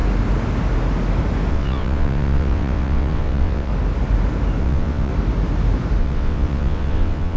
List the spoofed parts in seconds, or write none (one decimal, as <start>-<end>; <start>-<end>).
1.5-3.7; 4.6-5.1; 6.0-7.4